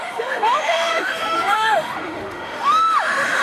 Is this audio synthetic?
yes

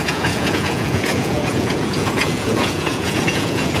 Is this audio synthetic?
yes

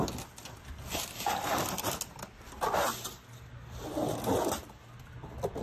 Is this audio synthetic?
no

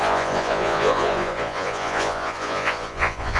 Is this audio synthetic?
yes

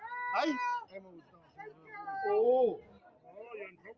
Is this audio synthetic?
no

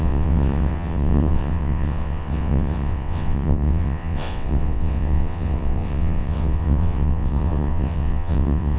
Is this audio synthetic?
yes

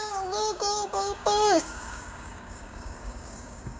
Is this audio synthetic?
yes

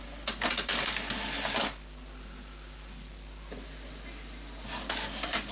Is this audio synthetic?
no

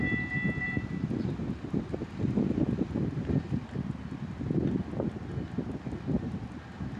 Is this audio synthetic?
no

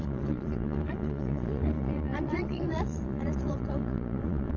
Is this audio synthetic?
yes